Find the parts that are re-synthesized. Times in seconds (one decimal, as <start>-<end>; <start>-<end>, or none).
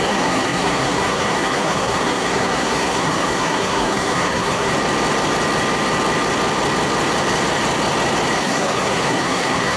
0.0-4.7; 8.4-9.8